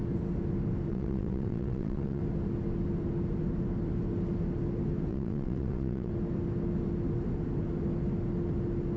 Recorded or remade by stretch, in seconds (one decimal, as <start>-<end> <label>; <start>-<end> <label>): 0.0-0.9 recorded; 0.9-2.2 remade; 2.2-5.1 recorded; 5.1-6.1 remade; 6.1-9.0 recorded